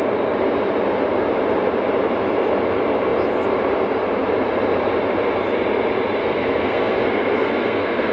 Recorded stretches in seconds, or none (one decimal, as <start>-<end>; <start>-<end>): 0.0-6.2